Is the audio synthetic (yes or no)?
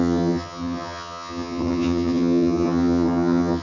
yes